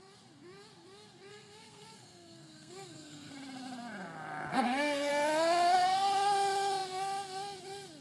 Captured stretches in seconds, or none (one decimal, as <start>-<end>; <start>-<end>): 0.0-1.3; 3.3-4.5; 5.1-8.0